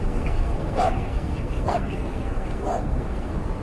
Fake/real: fake